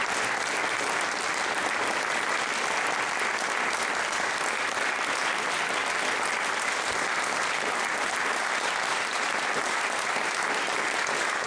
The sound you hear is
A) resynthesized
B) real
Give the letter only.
B